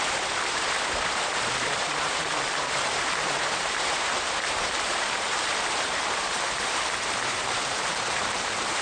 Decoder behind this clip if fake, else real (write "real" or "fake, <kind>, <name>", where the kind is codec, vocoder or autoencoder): fake, vocoder, BigVGAN v2